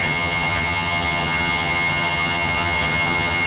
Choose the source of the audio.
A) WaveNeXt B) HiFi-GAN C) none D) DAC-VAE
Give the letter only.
B